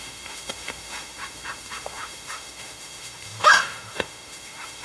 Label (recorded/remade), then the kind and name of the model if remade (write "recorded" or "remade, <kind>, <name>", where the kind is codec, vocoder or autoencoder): remade, autoencoder, DAC-VAE